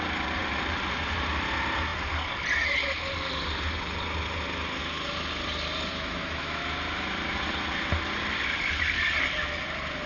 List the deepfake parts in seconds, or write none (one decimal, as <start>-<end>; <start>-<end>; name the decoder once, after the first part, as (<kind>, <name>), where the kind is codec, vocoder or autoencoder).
5.9-6.6 (autoencoder, DAC-VAE)